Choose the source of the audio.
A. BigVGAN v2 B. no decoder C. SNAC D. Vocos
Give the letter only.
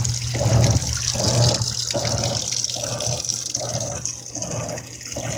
B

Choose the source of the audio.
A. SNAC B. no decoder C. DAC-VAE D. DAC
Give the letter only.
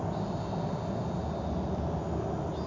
B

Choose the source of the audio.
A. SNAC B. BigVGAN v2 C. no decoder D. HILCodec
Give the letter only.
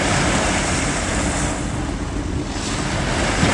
C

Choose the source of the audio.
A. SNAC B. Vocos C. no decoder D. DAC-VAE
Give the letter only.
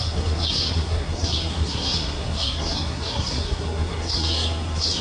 A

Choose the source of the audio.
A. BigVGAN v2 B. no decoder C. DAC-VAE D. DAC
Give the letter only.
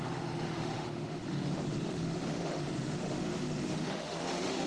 C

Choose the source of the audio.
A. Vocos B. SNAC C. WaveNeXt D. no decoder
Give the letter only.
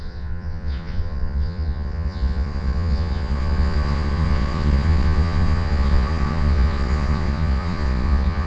A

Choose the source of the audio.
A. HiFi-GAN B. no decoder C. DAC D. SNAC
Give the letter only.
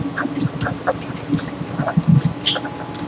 B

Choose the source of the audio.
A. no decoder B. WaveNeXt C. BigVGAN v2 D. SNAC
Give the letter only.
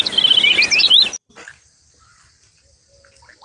A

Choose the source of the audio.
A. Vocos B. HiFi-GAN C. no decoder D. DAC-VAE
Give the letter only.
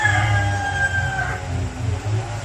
C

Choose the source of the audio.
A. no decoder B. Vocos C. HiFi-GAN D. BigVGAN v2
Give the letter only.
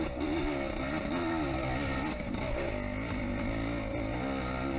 A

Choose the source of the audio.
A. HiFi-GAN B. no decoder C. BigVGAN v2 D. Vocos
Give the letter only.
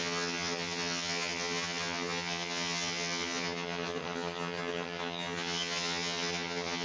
A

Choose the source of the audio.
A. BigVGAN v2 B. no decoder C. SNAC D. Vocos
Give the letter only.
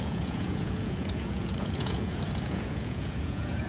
D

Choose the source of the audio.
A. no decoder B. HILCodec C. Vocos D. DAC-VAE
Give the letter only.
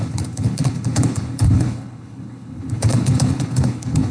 B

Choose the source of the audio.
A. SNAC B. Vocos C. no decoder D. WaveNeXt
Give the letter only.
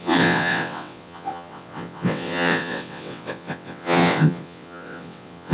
D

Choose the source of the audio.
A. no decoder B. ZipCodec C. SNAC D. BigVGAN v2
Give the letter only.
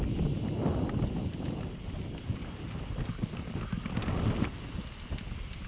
A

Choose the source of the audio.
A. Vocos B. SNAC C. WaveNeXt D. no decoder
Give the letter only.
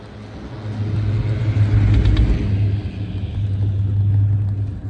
D